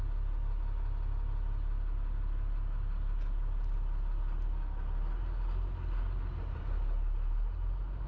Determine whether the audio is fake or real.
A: real